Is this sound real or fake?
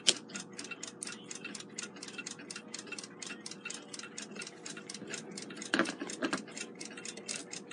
real